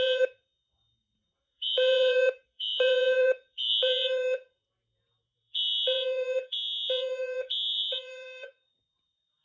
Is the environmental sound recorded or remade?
remade